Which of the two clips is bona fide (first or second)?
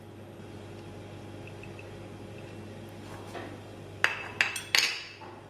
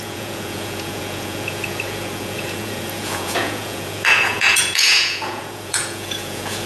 first